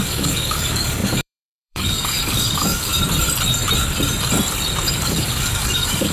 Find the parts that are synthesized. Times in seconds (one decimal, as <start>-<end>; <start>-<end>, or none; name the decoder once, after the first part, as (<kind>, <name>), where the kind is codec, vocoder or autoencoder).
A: 0.0-2.9 (codec, DAC); 5.0-6.1